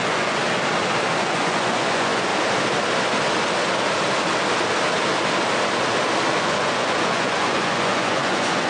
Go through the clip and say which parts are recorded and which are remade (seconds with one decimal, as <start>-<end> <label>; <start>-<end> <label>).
0.0-0.4 remade; 0.4-1.2 recorded; 1.2-2.3 remade; 2.3-6.4 recorded; 6.4-8.7 remade